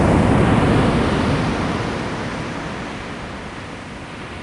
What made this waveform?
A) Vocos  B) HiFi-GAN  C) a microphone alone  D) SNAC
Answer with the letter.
C